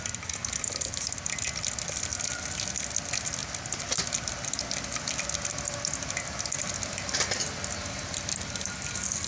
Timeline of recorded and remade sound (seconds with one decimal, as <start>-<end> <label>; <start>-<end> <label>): 0.0-9.3 recorded